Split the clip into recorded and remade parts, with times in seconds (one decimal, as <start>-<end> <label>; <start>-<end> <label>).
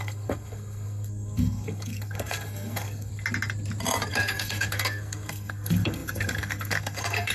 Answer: 0.0-3.1 remade; 3.1-4.1 recorded; 4.1-7.3 remade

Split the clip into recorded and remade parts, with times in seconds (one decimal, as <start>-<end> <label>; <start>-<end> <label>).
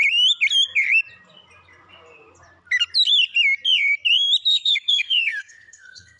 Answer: 0.0-4.5 recorded; 4.5-6.2 remade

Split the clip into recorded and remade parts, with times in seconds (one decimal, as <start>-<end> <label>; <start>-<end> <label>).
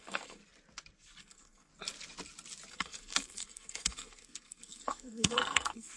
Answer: 0.0-0.4 remade; 0.4-1.2 recorded; 1.2-1.7 remade; 1.7-2.7 recorded; 2.7-6.0 remade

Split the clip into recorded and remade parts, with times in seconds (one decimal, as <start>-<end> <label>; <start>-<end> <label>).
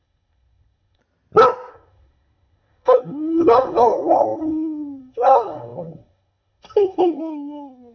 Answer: 0.0-1.0 remade; 1.0-1.7 recorded; 1.7-7.9 remade